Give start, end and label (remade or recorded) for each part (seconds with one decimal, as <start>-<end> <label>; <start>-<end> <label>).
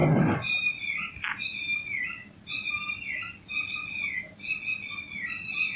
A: 0.0-5.8 recorded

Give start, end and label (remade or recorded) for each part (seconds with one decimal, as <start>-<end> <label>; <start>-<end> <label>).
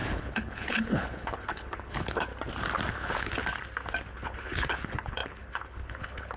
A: 0.0-2.3 remade; 2.3-2.9 recorded; 2.9-3.4 remade; 3.4-4.1 recorded; 4.1-6.4 remade